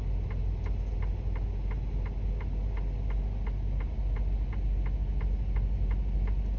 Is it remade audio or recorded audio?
recorded